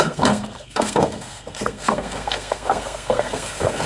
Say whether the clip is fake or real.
fake